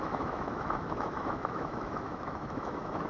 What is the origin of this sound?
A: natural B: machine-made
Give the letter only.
B